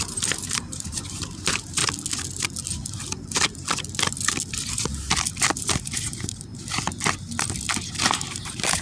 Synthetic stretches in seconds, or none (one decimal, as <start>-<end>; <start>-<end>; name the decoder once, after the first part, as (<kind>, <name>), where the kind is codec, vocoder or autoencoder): 0.0-1.8 (vocoder, BigVGAN v2); 5.6-6.5; 8.3-8.8